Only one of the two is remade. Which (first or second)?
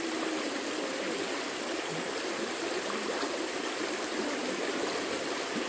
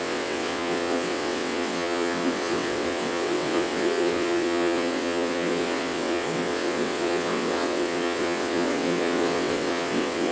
second